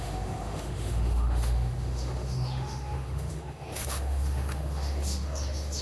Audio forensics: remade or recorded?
remade